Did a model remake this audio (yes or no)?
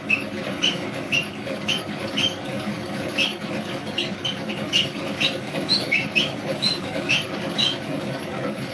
yes